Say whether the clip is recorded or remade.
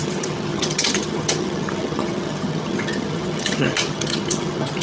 remade